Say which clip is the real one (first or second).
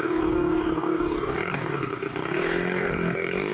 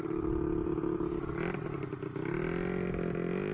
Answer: second